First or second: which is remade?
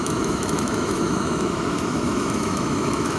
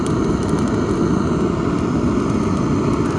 first